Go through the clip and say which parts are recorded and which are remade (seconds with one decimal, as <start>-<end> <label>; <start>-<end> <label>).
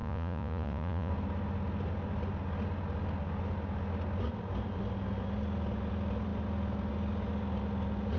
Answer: 0.0-1.1 remade; 1.1-8.2 recorded